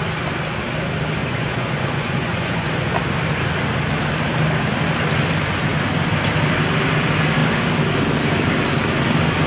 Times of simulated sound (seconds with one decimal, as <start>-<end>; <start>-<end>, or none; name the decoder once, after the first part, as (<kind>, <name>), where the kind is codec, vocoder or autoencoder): 1.2-2.9 (vocoder, Vocos)